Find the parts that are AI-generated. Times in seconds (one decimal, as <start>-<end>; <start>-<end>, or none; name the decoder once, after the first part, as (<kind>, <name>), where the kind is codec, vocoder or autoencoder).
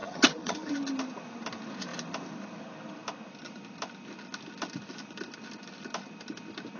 0.0-0.7 (vocoder, HiFi-GAN)